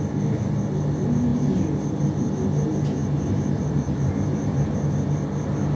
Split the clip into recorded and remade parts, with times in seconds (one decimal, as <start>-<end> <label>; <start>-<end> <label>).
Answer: 0.0-3.0 recorded; 3.0-4.9 remade; 4.9-5.7 recorded